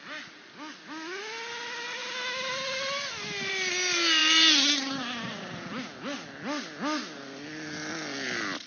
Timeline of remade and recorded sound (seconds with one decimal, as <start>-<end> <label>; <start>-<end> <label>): 0.0-8.7 recorded